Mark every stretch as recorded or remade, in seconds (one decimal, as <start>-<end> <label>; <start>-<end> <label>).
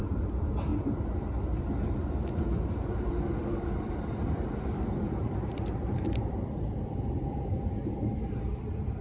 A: 0.0-0.7 remade; 0.7-3.1 recorded; 3.1-9.0 remade